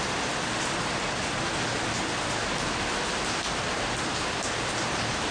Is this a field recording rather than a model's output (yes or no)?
yes